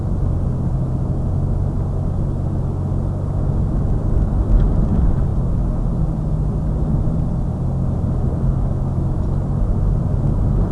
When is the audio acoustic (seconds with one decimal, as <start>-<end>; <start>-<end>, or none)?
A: 0.0-10.7